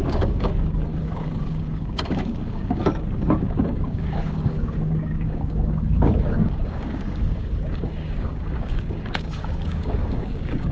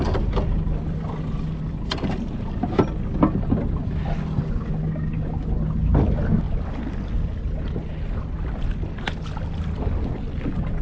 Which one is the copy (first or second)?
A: first